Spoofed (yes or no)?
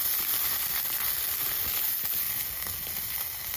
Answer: no